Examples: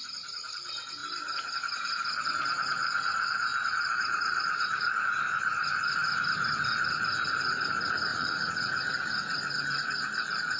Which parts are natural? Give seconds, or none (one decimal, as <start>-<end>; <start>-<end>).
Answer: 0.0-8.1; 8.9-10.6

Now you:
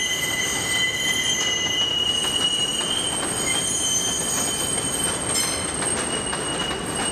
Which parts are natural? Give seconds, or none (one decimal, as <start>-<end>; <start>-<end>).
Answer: 0.0-7.1

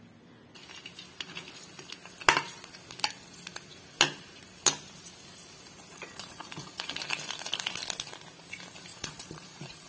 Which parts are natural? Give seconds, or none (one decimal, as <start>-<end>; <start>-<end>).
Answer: 0.0-5.9; 7.0-8.9